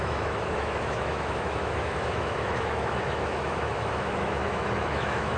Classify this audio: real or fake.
fake